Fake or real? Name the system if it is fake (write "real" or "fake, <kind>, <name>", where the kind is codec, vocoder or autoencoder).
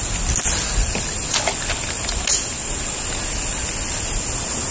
real